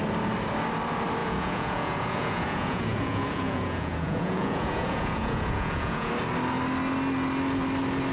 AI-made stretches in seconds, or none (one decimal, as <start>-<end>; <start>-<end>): 1.2-6.1